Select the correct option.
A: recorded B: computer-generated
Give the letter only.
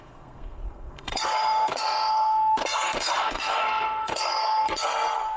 B